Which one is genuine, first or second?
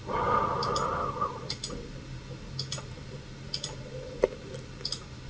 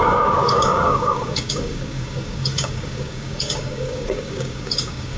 first